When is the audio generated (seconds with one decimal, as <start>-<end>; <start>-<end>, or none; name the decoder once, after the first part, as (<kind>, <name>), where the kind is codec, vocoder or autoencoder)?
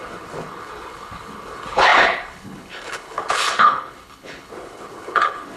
0.0-5.6 (codec, HILCodec)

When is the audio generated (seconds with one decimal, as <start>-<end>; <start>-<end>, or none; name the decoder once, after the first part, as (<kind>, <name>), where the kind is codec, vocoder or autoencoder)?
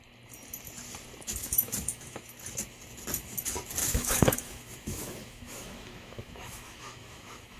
1.4-2.3 (autoencoder, DAC-VAE); 3.8-7.6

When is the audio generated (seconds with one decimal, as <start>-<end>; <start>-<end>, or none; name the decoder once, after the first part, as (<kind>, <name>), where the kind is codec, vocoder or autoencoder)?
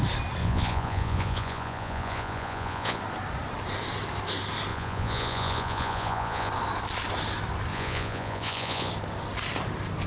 0.4-3.0 (vocoder, Vocos); 4.7-6.5; 7.7-8.9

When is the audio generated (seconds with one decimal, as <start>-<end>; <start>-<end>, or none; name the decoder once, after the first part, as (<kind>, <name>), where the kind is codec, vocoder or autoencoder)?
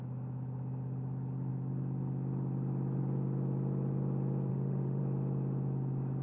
4.5-5.0 (autoencoder, DAC-VAE)